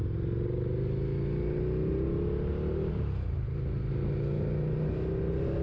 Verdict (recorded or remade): recorded